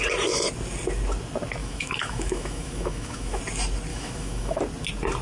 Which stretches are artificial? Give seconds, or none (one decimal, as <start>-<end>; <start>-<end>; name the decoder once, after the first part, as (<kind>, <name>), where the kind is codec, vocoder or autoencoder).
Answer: 1.6-3.4 (autoencoder, DAC-VAE); 3.9-4.6